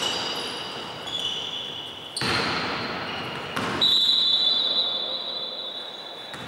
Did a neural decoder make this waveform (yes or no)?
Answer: no